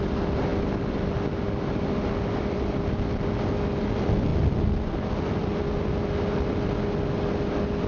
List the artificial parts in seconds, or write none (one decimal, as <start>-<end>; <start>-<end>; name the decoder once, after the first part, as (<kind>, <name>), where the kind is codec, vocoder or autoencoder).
none